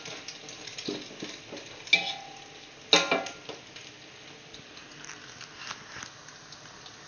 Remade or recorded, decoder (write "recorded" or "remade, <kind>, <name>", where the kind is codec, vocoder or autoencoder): recorded